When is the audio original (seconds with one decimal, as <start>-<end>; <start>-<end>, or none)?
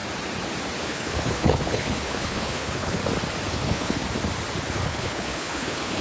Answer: 0.0-0.8; 3.0-3.5; 4.0-4.7